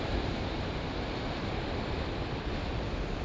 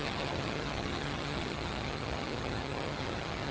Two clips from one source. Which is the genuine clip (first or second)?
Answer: first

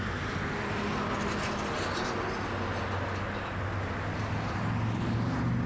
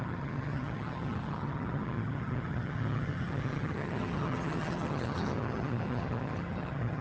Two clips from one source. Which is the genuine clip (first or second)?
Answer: first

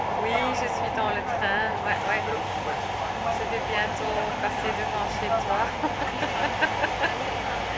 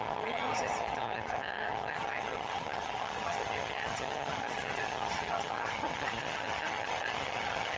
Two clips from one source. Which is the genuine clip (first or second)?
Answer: first